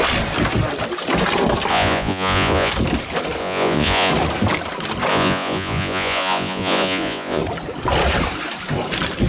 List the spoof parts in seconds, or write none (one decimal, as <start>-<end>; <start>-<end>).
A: 1.7-2.7; 3.4-4.1; 5.1-7.4